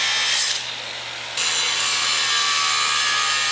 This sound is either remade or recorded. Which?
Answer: recorded